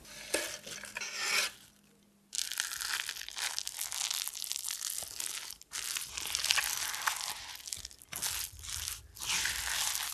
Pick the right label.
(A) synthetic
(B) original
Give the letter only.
B